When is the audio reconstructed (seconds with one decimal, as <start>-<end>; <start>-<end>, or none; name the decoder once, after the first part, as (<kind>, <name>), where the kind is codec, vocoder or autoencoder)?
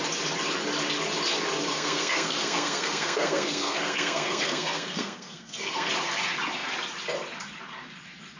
1.7-5.9 (codec, SNAC)